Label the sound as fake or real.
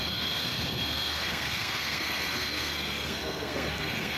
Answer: fake